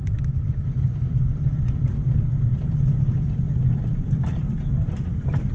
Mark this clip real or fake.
real